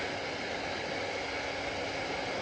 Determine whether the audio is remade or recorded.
recorded